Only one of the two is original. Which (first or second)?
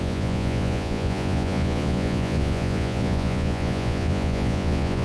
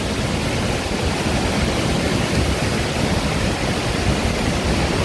second